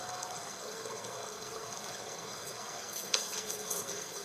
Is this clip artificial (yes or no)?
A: yes